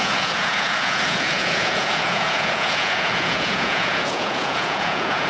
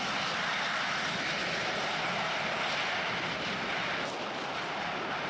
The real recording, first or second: second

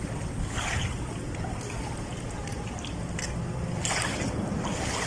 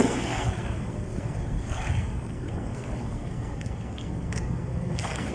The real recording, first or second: first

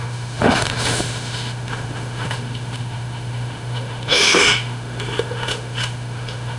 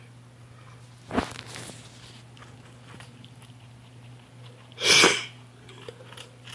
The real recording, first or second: second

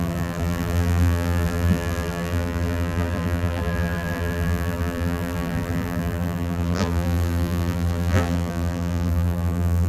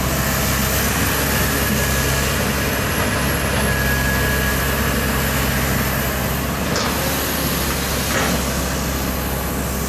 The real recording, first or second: second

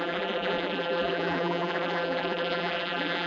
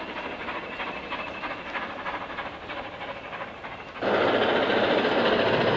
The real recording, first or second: second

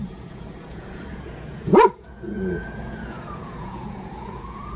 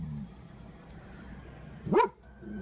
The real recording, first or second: second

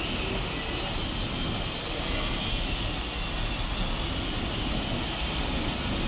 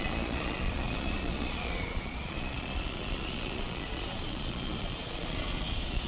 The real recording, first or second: first